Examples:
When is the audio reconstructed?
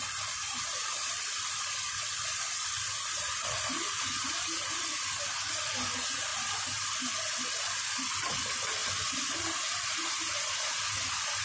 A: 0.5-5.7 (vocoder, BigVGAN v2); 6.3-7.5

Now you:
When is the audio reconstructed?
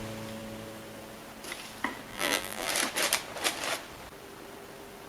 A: 2.1-2.7 (vocoder, BigVGAN v2)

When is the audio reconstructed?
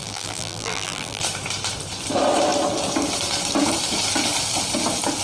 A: 0.0-1.2 (vocoder, BigVGAN v2)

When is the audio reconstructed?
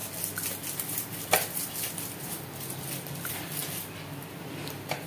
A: 3.1-3.6 (vocoder, BigVGAN v2); 4.3-5.1